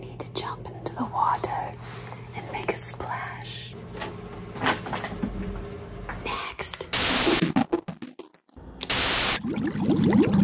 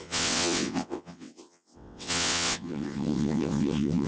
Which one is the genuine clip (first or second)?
first